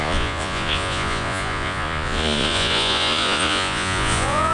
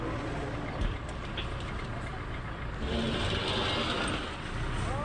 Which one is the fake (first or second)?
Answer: first